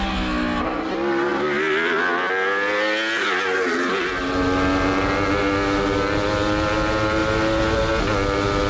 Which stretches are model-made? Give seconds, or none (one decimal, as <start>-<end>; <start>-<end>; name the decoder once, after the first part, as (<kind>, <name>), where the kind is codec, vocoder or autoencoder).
7.2-7.9 (vocoder, BigVGAN v2)